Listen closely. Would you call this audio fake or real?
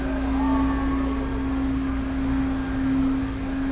real